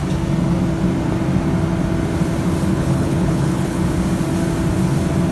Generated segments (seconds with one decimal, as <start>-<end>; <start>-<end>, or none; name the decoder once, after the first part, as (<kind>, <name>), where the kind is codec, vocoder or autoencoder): 2.7-3.8 (codec, HILCodec)